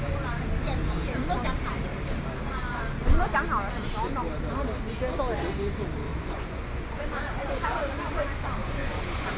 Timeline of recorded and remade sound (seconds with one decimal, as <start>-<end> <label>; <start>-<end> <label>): 0.0-6.1 recorded; 6.1-7.3 remade; 7.3-8.6 recorded; 8.6-9.4 remade